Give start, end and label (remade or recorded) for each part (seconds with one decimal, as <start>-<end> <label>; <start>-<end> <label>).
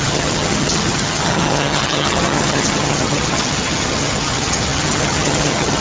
0.0-5.8 remade